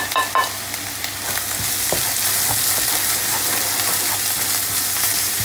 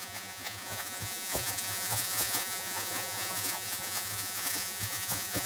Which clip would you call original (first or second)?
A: first